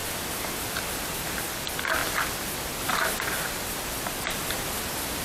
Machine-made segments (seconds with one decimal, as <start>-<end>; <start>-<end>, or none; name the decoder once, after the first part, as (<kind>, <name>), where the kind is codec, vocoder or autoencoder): 0.0-0.7 (vocoder, BigVGAN v2)

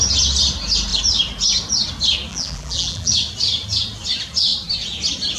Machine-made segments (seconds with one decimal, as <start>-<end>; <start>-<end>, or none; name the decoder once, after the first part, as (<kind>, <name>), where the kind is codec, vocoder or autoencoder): 2.3-3.1 (vocoder, BigVGAN v2)

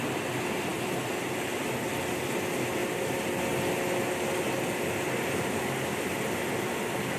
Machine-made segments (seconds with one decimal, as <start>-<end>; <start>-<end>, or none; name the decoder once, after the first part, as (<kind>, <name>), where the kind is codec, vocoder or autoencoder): none

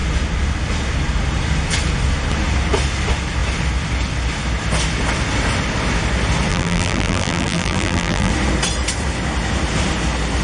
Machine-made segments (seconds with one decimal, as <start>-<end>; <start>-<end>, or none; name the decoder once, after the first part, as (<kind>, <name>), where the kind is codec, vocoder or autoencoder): 6.5-8.3 (vocoder, BigVGAN v2)

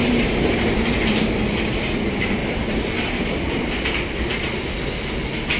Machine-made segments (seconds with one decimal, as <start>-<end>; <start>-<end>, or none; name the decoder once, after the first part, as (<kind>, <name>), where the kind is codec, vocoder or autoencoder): 2.4-3.9 (vocoder, BigVGAN v2)

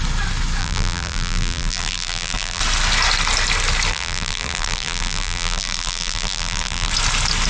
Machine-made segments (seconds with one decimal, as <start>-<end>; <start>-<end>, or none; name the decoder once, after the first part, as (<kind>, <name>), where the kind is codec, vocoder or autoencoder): 0.6-2.6 (vocoder, BigVGAN v2); 3.9-6.9